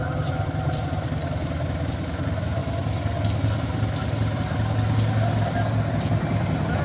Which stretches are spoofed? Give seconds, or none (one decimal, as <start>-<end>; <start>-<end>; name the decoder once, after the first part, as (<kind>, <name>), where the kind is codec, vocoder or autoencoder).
0.0-2.6 (vocoder, BigVGAN v2); 6.0-6.8